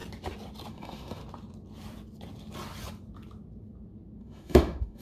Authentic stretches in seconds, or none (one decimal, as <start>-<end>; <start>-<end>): 0.0-0.7; 1.2-4.2